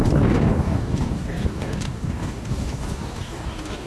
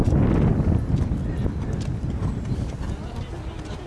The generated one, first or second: first